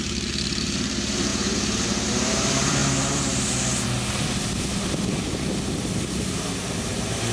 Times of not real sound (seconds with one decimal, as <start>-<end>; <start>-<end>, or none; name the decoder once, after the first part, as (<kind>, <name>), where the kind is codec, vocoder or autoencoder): 0.0-2.8 (vocoder, BigVGAN v2); 6.3-7.3